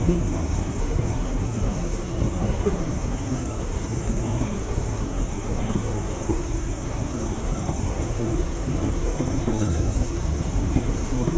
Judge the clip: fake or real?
fake